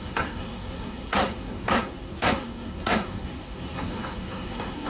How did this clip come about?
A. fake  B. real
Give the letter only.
A